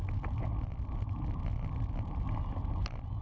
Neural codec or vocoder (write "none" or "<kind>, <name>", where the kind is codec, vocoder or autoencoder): none